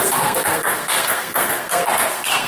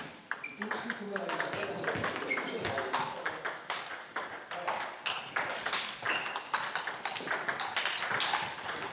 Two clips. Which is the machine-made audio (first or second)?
first